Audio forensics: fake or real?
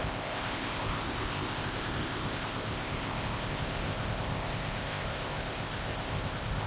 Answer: fake